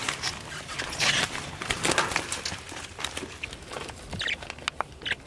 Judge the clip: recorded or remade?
recorded